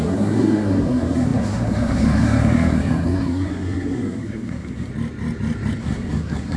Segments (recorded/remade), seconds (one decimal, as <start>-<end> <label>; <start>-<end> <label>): 0.0-4.9 remade; 4.9-5.8 recorded; 5.8-6.6 remade

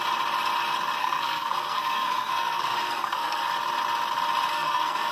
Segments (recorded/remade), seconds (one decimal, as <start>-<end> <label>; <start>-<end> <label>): 0.0-1.0 recorded; 1.0-3.4 remade; 3.4-4.5 recorded; 4.5-5.1 remade

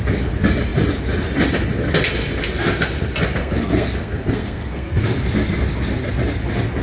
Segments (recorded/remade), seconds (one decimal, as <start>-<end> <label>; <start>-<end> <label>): 0.0-3.4 recorded; 3.4-5.0 remade; 5.0-6.8 recorded

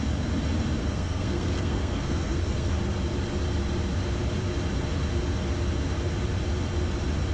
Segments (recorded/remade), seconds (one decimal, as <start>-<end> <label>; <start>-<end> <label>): 0.0-0.8 recorded; 0.8-2.7 remade; 2.7-7.3 recorded

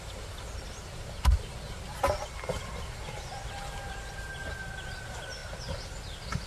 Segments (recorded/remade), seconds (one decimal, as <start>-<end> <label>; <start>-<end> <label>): 0.0-6.5 recorded

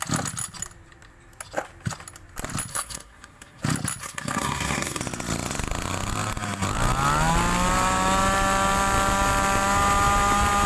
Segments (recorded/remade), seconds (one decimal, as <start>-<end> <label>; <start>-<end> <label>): 0.0-2.7 recorded; 2.7-3.6 remade; 3.6-4.0 recorded; 4.0-5.0 remade; 5.0-10.7 recorded